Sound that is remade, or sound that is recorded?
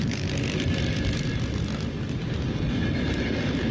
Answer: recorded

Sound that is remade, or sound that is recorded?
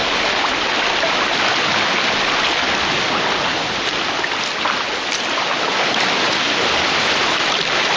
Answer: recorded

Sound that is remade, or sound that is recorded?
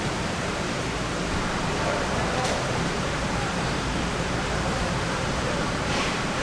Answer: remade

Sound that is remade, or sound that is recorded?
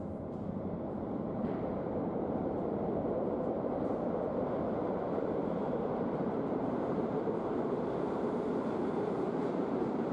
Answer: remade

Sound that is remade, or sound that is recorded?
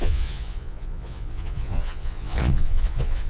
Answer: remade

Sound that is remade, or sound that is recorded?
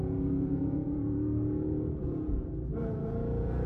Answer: remade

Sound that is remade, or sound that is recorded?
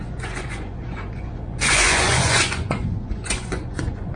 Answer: remade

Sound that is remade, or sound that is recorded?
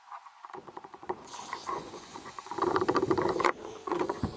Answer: remade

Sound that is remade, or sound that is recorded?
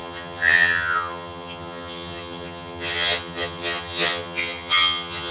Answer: remade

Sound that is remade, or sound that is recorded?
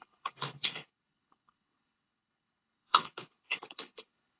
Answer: remade